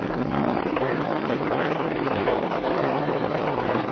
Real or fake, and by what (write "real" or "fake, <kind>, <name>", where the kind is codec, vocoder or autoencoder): fake, codec, SNAC